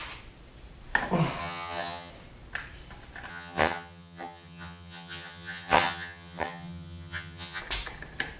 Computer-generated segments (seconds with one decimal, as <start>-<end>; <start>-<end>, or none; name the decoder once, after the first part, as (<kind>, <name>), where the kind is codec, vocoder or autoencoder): 1.4-2.1 (vocoder, HiFi-GAN); 3.3-7.6